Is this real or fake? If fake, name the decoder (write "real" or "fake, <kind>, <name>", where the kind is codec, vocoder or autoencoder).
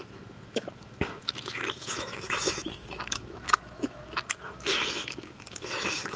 fake, autoencoder, DAC-VAE